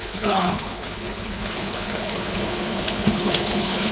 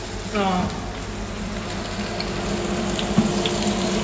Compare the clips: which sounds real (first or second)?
second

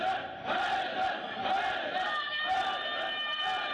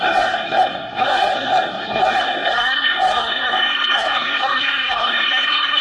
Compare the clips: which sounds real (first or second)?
first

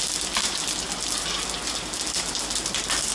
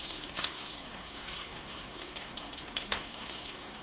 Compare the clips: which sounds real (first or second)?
first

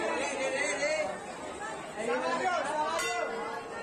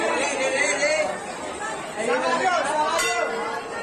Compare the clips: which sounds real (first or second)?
first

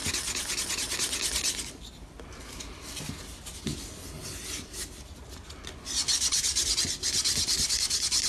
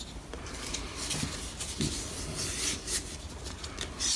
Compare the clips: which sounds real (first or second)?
first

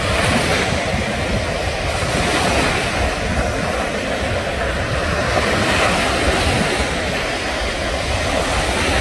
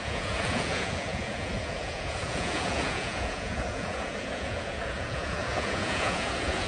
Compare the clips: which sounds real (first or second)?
first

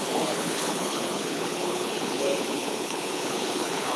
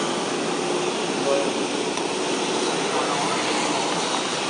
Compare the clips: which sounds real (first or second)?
second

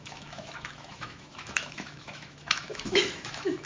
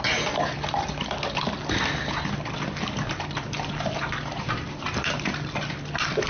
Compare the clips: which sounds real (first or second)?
second